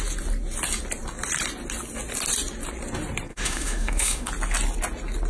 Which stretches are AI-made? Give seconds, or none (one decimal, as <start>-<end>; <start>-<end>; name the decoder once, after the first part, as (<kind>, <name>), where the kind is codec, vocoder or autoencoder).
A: 3.3-4.3 (autoencoder, DAC-VAE)